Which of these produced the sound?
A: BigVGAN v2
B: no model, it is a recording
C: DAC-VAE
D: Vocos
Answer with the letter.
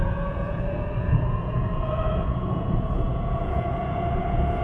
D